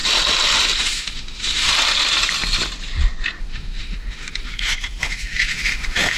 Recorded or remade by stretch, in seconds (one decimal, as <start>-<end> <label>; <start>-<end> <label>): 0.0-0.8 recorded; 0.8-1.7 remade; 1.7-3.4 recorded; 3.4-6.2 remade